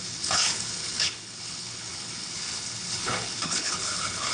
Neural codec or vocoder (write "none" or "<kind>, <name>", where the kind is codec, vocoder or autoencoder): codec, HILCodec